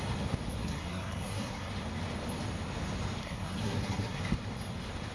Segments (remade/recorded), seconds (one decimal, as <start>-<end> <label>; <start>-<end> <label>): 0.0-0.6 recorded; 0.6-1.7 remade; 1.7-3.2 recorded; 3.2-4.2 remade; 4.2-5.1 recorded